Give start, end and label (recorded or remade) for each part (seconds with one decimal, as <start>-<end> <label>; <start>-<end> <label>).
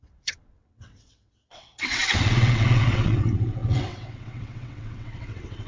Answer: 0.0-5.7 remade